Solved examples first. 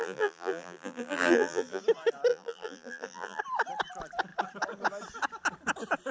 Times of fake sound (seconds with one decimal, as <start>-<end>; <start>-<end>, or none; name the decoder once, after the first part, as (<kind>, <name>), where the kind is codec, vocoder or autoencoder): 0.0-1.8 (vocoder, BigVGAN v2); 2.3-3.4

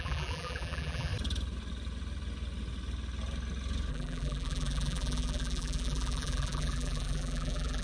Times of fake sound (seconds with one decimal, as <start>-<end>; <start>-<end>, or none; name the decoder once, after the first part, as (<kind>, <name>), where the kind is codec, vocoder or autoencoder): 0.0-1.1 (vocoder, BigVGAN v2); 3.9-7.8

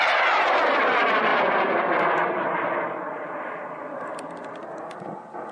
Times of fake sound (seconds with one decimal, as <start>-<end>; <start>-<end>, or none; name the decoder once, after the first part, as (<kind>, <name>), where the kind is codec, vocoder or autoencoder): 1.3-4.6 (vocoder, BigVGAN v2)

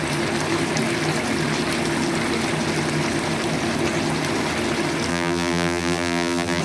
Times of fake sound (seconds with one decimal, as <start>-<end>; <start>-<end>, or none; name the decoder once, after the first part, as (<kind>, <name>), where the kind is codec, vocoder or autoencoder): 5.1-6.6 (vocoder, BigVGAN v2)

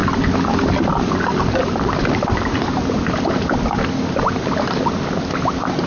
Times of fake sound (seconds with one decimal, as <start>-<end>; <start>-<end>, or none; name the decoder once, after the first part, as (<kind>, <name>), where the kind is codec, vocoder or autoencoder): 0.8-5.9 (vocoder, BigVGAN v2)